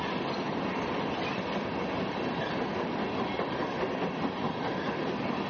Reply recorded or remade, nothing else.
recorded